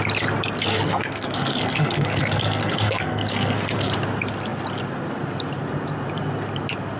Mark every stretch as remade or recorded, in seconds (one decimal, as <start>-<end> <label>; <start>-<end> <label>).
0.0-0.7 recorded; 0.7-3.9 remade; 3.9-7.0 recorded